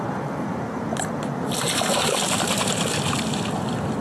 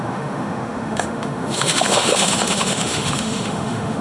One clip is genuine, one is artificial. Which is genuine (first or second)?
first